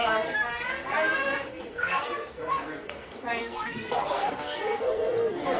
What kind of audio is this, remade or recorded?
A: remade